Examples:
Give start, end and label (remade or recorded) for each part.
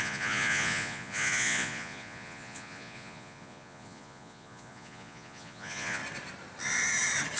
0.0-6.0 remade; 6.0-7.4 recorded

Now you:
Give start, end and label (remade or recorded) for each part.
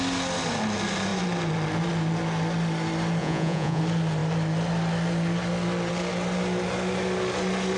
0.0-3.2 recorded; 3.2-3.8 remade; 3.8-7.8 recorded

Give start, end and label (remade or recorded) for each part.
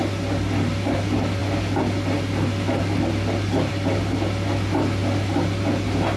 0.0-6.2 recorded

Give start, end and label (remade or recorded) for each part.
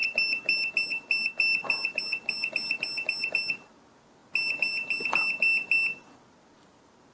0.0-7.1 recorded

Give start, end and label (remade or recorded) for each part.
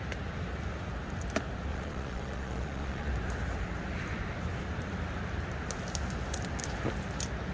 0.0-1.7 recorded; 1.7-3.1 remade; 3.1-7.5 recorded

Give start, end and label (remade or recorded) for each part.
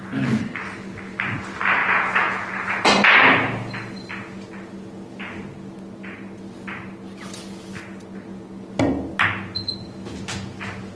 0.0-1.8 recorded; 1.8-2.5 remade; 2.5-11.0 recorded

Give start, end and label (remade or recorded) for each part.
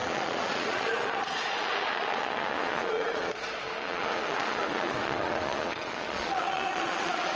0.0-7.4 remade